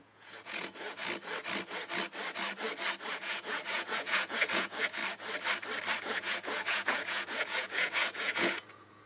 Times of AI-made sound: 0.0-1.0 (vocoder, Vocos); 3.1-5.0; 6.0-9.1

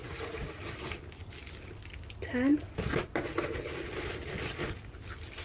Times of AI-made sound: 0.0-0.6 (vocoder, Vocos)

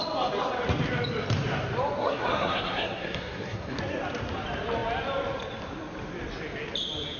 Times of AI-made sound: 2.0-3.8 (codec, SNAC)